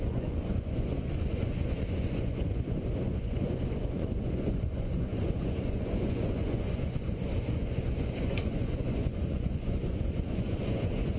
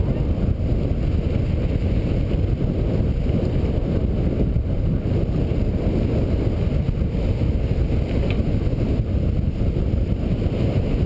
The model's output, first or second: first